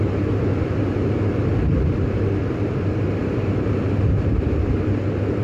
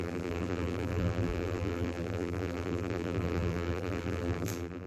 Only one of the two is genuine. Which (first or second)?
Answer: first